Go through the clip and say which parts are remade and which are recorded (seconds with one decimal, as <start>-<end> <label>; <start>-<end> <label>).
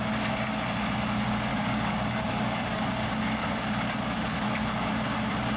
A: 0.0-1.5 recorded; 1.5-4.9 remade; 4.9-5.6 recorded